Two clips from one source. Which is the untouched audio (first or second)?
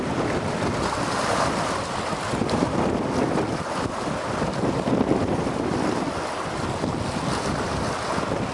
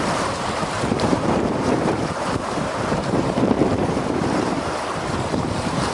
first